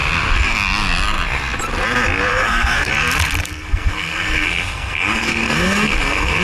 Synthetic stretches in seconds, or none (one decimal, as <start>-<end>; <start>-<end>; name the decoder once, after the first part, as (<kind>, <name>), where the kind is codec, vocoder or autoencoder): 2.3-2.9 (codec, SNAC); 3.4-6.4